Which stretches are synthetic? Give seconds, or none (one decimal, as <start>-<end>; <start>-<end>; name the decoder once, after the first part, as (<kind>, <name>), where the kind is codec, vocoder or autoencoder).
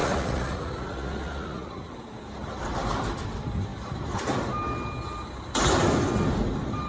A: 0.0-1.9 (vocoder, Vocos)